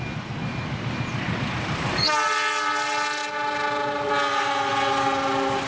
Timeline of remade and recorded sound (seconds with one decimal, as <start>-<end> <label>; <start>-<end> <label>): 0.0-5.7 recorded